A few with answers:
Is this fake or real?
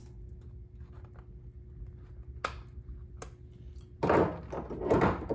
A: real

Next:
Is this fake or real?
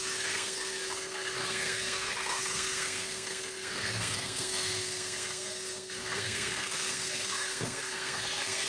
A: fake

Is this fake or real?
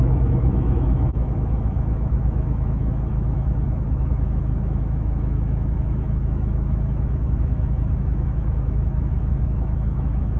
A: fake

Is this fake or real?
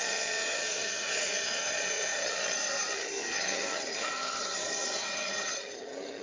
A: fake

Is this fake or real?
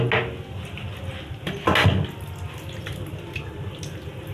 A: real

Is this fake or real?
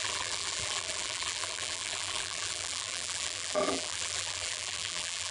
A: fake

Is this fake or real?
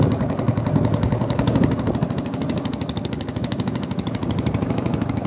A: fake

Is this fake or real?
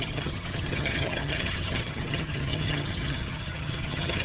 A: fake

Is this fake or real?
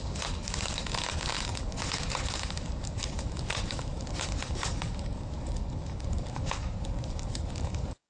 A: fake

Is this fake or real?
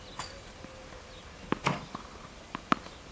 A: real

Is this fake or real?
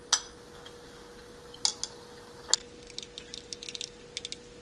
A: real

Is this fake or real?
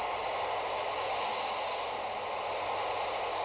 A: real